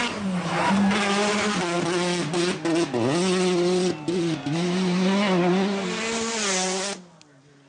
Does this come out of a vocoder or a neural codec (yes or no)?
no